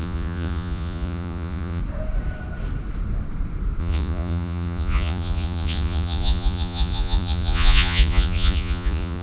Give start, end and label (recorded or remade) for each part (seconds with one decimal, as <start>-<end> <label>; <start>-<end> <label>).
0.0-1.8 remade; 1.8-3.8 recorded; 3.8-9.2 remade